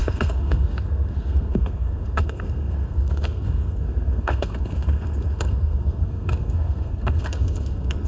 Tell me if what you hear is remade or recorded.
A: remade